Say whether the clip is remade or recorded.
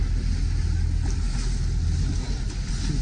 recorded